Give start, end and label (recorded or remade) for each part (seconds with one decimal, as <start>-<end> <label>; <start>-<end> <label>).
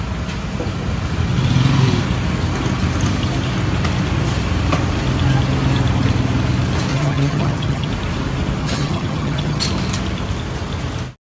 0.0-6.9 recorded; 6.9-7.9 remade; 7.9-8.6 recorded; 8.6-9.7 remade; 9.7-11.3 recorded